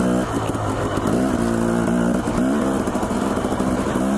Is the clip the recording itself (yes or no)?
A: yes